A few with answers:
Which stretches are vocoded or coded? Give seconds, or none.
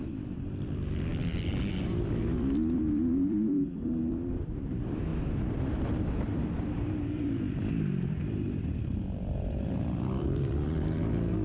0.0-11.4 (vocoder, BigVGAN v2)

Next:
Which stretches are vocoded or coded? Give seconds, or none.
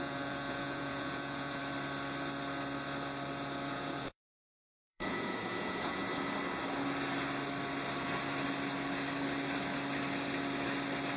0.0-1.6 (vocoder, Vocos); 3.7-6.0